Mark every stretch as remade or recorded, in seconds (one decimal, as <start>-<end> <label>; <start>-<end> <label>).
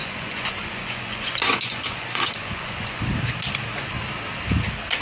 0.0-3.0 remade; 3.0-5.0 recorded